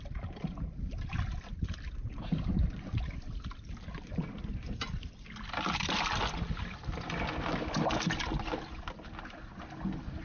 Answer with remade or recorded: recorded